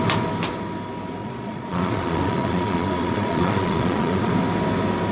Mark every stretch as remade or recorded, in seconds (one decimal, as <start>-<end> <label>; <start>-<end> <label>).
0.0-1.2 recorded; 1.2-4.3 remade; 4.3-5.1 recorded